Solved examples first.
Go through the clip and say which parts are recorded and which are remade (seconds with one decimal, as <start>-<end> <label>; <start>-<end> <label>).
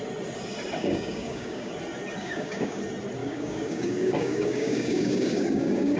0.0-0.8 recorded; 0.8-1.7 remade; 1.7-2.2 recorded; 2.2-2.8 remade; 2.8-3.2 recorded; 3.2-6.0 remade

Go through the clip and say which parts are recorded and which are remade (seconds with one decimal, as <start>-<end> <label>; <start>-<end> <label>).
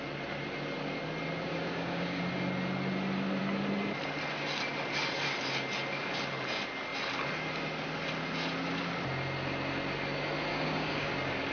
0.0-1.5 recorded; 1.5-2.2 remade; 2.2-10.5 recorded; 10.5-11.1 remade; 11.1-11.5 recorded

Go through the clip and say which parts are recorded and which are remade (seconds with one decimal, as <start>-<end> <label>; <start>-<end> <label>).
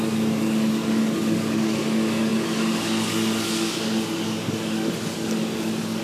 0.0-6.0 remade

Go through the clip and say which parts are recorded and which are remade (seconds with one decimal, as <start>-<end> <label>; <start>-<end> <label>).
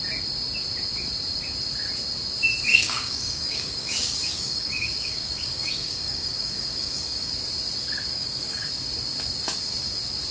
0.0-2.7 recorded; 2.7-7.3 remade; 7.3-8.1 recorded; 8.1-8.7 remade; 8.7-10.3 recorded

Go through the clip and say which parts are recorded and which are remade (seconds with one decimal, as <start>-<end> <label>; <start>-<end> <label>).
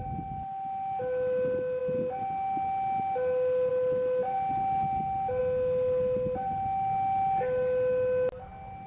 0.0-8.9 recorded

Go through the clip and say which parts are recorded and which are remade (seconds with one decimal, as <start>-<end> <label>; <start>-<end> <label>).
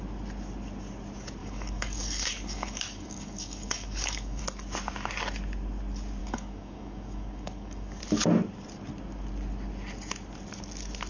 0.0-1.4 recorded; 1.4-4.4 remade; 4.4-6.2 recorded; 6.2-8.0 remade; 8.0-11.1 recorded